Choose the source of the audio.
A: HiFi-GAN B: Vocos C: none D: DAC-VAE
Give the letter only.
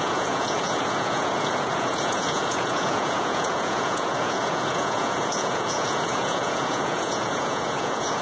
B